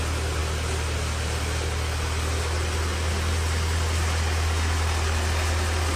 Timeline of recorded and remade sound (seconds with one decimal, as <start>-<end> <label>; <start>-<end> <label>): 0.0-6.0 recorded